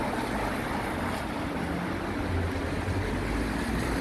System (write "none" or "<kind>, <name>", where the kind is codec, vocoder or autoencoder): none